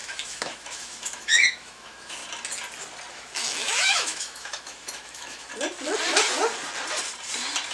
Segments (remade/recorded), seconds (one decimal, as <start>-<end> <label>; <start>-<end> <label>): 0.0-2.2 remade; 2.2-3.1 recorded; 3.1-5.5 remade; 5.5-7.7 recorded